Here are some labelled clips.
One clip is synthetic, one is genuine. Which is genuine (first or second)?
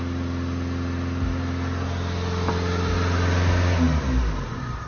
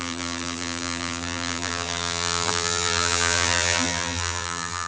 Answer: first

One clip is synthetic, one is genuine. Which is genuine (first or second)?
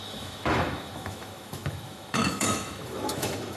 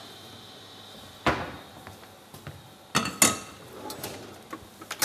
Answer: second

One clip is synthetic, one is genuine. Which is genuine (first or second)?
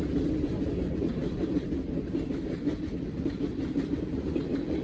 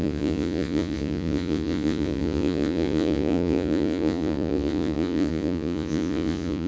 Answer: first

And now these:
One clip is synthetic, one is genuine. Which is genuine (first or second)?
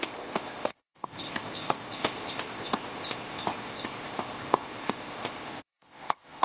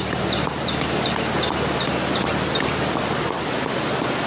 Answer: second